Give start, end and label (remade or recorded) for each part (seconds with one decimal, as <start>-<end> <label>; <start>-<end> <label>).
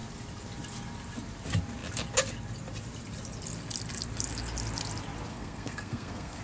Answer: 0.0-5.3 recorded; 5.3-6.4 remade